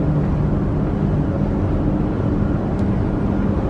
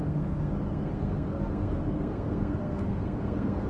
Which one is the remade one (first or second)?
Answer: second